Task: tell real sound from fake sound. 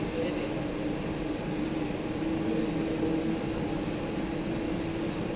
real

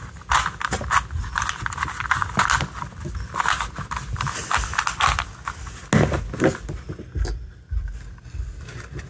real